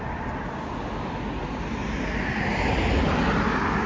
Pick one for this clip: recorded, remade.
recorded